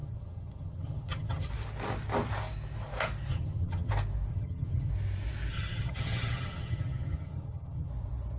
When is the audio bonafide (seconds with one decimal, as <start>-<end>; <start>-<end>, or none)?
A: 1.5-3.3; 3.9-4.3; 4.9-5.5; 7.9-8.4